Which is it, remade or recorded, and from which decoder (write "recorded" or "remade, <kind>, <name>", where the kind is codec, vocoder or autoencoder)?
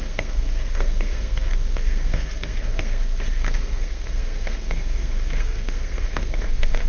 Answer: remade, codec, SNAC